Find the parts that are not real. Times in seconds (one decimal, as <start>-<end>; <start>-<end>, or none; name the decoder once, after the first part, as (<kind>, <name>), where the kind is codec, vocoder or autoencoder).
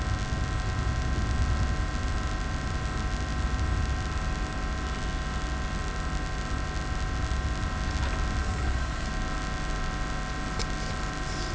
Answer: 8.4-9.1 (codec, SNAC)